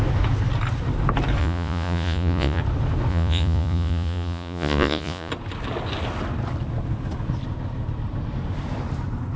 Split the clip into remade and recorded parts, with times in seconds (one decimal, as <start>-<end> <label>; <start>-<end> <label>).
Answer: 0.0-1.4 recorded; 1.4-2.6 remade; 2.6-3.1 recorded; 3.1-5.3 remade; 5.3-9.4 recorded